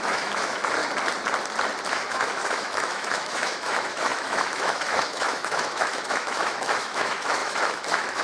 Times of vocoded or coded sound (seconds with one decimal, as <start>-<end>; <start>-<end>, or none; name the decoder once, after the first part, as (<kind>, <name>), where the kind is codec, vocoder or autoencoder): 0.0-0.8 (autoencoder, DAC-VAE); 1.9-8.2

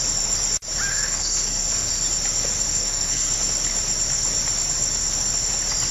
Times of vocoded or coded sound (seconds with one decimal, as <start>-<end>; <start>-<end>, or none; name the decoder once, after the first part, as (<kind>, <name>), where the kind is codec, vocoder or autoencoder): 0.9-1.9 (codec, SNAC); 2.7-3.3

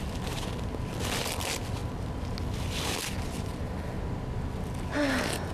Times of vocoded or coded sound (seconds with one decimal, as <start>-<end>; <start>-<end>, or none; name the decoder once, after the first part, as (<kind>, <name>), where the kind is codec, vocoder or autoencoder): none

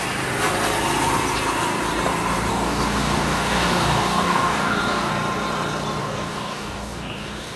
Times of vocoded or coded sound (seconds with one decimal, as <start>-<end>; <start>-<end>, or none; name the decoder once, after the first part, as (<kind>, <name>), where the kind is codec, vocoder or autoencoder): 2.5-5.1 (codec, DAC); 6.0-7.6

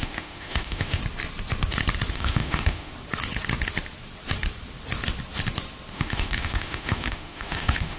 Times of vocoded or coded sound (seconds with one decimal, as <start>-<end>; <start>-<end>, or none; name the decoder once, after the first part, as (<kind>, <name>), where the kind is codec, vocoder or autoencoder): 0.0-1.0 (autoencoder, DAC-VAE); 2.1-2.9; 5.9-8.0

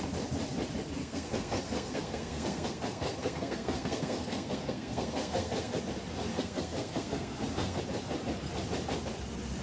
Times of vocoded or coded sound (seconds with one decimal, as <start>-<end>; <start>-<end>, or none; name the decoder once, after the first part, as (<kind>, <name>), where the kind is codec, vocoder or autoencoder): 1.0-5.8 (codec, SNAC); 6.3-7.8

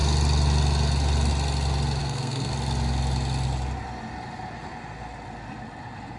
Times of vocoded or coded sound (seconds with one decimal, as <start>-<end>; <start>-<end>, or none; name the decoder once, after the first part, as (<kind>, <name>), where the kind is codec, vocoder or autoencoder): 2.0-2.5 (codec, SNAC)